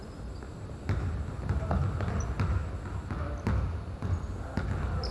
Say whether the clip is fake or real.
real